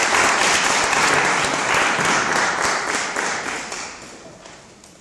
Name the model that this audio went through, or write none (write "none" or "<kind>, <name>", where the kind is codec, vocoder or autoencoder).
none